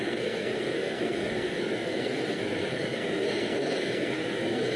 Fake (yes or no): yes